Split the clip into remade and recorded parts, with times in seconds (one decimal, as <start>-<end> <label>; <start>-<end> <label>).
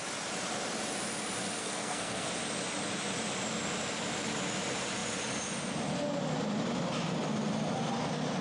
0.0-1.6 recorded; 1.6-2.3 remade; 2.3-8.4 recorded